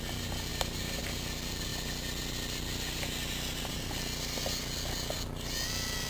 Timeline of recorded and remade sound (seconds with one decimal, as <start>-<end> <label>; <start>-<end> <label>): 0.0-0.5 recorded; 0.5-1.0 remade; 1.0-6.1 recorded